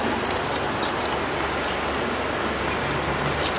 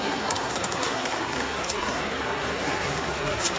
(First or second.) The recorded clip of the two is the first